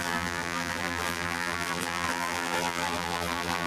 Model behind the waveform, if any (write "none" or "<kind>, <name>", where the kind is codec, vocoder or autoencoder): vocoder, BigVGAN v2